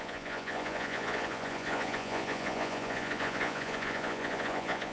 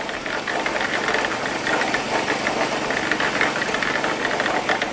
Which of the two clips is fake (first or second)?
first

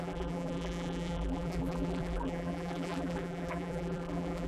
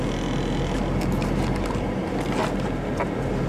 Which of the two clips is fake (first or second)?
first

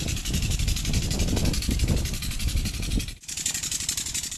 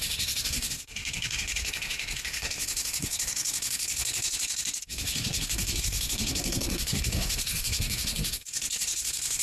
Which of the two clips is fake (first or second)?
second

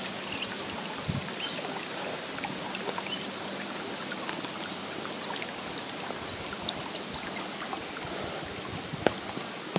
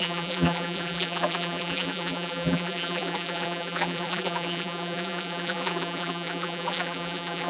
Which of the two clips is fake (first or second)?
second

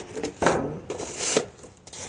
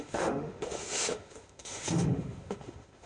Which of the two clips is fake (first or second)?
second